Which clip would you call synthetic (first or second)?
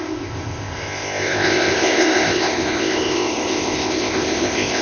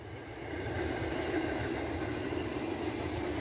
first